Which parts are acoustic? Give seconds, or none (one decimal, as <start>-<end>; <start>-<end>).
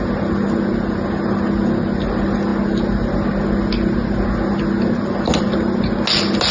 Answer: 0.0-6.5